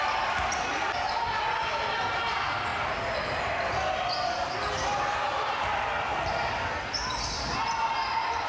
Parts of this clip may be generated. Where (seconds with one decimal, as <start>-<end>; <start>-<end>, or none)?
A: none